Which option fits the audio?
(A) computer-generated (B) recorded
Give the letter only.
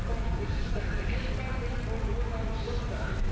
B